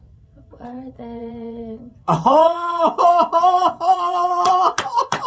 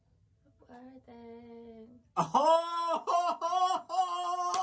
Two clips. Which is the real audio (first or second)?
second